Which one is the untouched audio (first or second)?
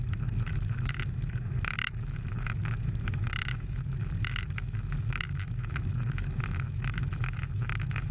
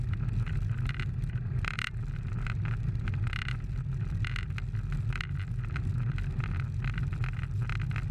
second